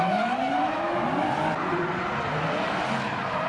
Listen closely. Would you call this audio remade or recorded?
recorded